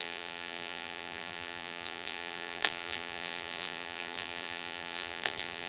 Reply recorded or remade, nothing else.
remade